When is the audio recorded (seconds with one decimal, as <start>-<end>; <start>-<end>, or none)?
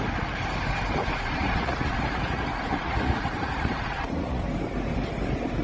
0.0-1.0; 4.4-5.6